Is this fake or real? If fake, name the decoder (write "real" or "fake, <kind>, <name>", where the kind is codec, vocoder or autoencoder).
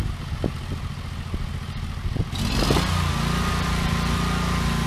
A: real